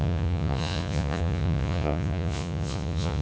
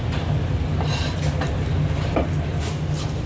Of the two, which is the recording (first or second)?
second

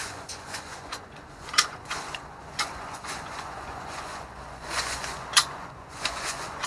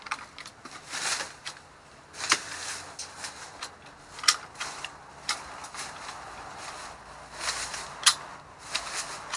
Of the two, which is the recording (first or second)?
second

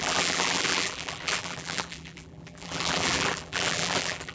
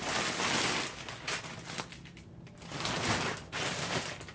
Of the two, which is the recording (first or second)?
second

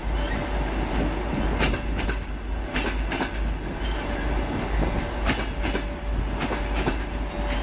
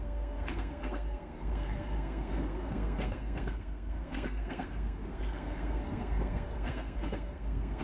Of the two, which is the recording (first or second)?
first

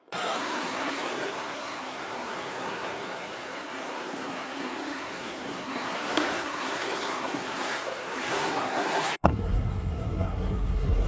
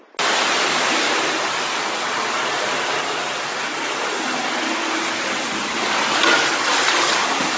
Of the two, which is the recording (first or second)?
second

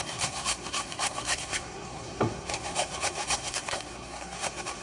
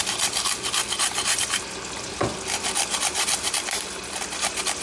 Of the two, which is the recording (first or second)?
second